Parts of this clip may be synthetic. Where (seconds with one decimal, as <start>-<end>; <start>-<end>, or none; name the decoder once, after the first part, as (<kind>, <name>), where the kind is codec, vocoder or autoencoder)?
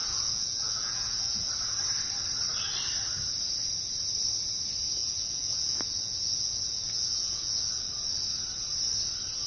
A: 0.0-1.5 (vocoder, Vocos); 5.0-7.9